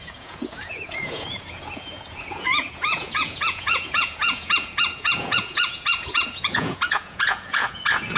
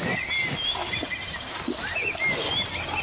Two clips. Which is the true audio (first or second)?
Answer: second